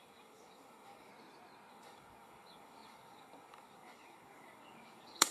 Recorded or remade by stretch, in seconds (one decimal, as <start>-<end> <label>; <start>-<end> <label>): 0.0-1.1 remade; 1.1-1.7 recorded; 1.7-5.3 remade